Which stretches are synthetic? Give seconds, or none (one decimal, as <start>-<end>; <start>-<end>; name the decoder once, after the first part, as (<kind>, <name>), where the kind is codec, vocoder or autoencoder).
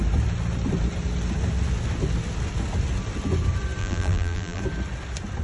3.8-4.6 (vocoder, BigVGAN v2)